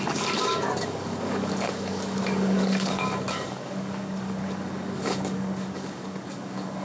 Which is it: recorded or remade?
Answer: remade